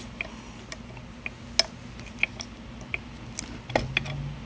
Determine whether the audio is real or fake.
real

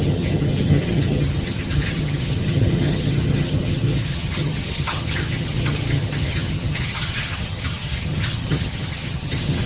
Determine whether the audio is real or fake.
fake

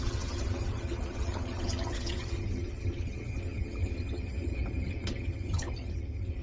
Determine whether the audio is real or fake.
fake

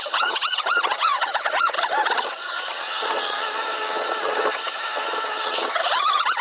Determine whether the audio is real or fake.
fake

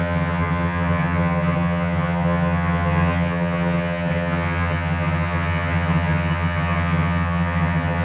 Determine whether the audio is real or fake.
fake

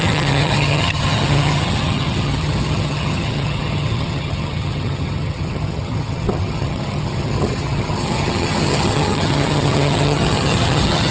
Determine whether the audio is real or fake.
fake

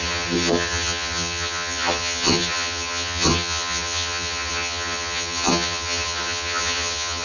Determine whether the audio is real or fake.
fake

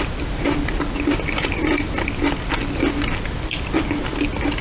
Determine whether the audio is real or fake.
real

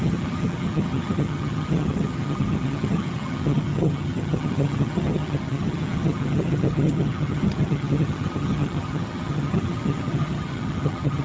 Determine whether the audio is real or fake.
fake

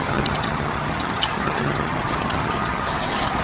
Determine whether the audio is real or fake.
fake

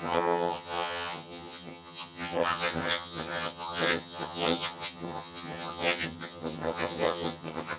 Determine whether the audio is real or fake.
fake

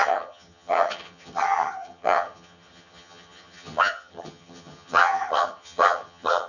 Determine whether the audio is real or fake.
fake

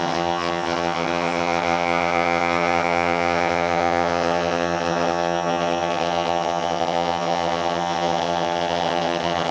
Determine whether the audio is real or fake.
fake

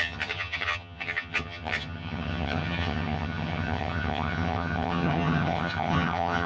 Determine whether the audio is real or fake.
fake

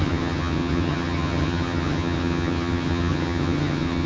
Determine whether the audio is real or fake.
fake